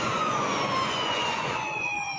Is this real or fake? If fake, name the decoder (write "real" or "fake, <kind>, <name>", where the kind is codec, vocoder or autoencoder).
fake, vocoder, Vocos